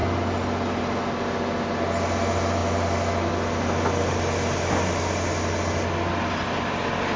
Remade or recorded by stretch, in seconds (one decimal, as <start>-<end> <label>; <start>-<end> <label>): 0.0-7.2 recorded